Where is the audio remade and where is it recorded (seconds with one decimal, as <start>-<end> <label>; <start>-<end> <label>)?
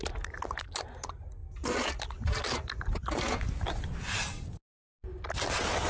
0.0-5.9 recorded